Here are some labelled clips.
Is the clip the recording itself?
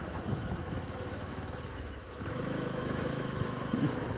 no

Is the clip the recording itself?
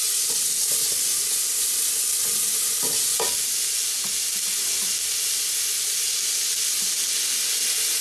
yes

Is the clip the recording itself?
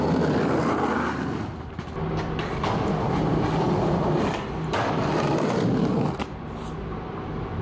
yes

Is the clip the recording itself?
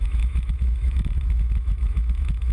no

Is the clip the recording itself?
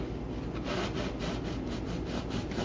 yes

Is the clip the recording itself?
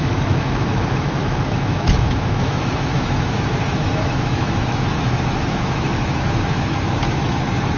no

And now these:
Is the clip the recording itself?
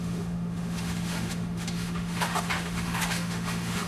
no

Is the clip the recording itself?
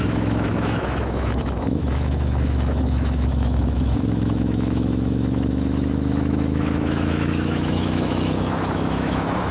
no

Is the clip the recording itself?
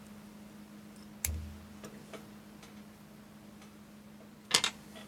yes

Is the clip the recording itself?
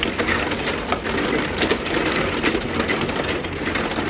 yes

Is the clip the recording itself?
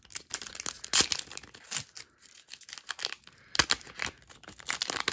yes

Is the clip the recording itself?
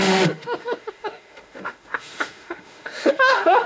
no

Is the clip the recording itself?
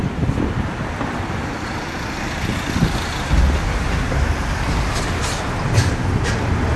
yes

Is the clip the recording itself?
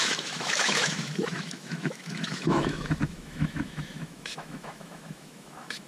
no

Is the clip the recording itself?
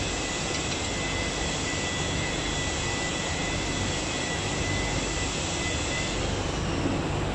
yes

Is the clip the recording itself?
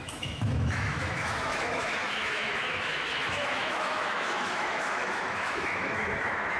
no